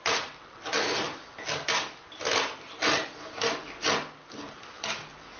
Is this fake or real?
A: real